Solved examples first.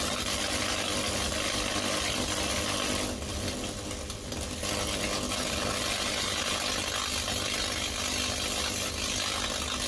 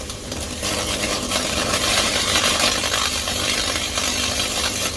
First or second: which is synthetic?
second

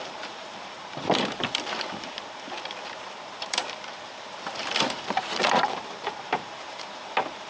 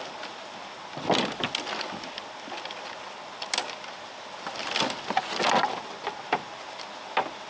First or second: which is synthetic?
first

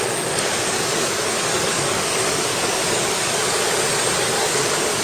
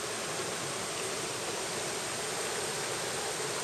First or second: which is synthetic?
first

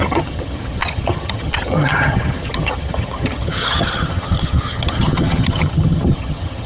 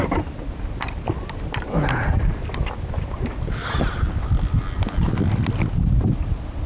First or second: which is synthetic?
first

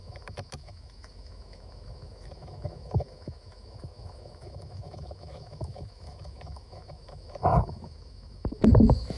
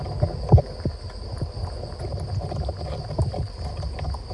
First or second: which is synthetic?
first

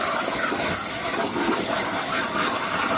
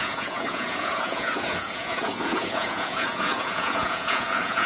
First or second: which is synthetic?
second